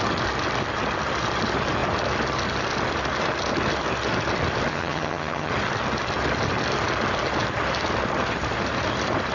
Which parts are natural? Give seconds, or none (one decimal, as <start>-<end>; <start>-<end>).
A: 0.0-4.7; 5.5-9.3